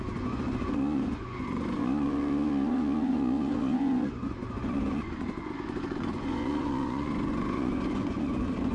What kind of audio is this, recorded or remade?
remade